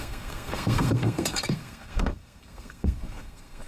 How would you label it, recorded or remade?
remade